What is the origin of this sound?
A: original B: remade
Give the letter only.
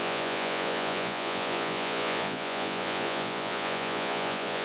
B